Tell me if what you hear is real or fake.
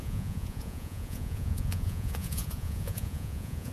fake